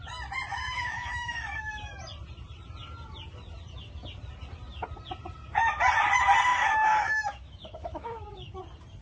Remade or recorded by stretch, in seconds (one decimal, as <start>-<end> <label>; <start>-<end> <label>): 0.0-0.5 recorded; 0.5-1.9 remade; 1.9-6.5 recorded; 6.5-8.6 remade; 8.6-9.0 recorded